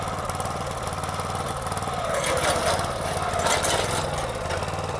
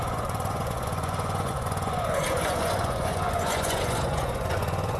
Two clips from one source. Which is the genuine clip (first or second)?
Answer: first